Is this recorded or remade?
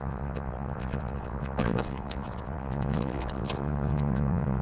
remade